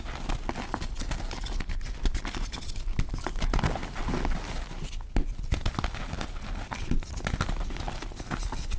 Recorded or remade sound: recorded